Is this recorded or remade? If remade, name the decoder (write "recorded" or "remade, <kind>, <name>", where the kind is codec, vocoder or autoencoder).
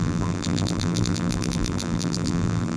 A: remade, vocoder, BigVGAN v2